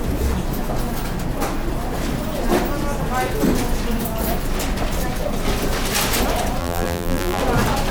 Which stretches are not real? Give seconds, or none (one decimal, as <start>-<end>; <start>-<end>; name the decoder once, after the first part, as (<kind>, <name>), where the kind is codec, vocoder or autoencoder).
6.6-7.4 (vocoder, BigVGAN v2)